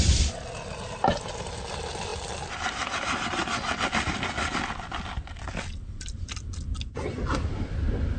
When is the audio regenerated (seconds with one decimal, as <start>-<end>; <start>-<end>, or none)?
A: none